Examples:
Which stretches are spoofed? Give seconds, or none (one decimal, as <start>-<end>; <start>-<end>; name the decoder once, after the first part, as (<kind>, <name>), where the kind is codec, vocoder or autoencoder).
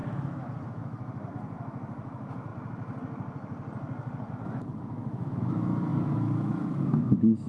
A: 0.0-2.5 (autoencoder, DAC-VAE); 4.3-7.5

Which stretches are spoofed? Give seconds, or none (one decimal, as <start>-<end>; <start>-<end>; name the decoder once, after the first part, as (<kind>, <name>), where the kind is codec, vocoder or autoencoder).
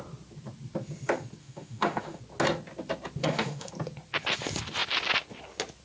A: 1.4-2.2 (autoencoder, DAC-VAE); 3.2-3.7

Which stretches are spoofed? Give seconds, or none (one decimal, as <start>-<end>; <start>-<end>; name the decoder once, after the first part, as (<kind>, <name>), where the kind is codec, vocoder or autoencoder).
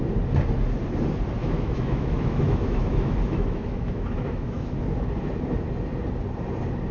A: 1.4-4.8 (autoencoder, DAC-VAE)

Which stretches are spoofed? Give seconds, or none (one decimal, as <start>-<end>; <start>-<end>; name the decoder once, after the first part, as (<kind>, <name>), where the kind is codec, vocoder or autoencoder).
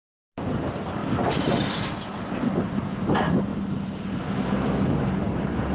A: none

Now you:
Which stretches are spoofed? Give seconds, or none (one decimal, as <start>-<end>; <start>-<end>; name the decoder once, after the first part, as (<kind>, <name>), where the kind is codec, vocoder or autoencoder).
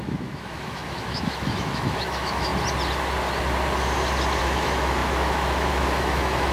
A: 0.0-2.5 (autoencoder, DAC-VAE); 4.4-6.5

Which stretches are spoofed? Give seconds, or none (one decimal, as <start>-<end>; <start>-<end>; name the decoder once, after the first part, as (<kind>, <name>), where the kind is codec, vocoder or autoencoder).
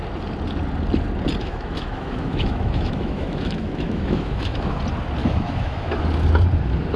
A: 1.4-4.8 (autoencoder, DAC-VAE); 5.2-5.9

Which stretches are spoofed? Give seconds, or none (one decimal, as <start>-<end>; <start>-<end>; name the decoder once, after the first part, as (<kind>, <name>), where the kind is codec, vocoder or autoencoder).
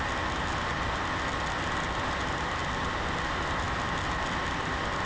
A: none